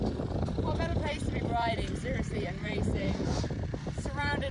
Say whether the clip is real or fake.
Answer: fake